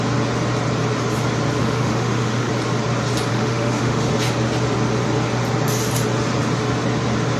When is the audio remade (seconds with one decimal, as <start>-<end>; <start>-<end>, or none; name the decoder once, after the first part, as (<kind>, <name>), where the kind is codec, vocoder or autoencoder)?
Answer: 1.6-2.5 (autoencoder, DAC-VAE); 3.3-4.1